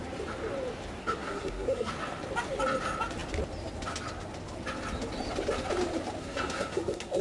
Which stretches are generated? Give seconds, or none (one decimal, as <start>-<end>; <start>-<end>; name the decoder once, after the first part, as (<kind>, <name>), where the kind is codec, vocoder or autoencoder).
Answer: 1.0-1.9 (codec, SNAC); 6.2-7.2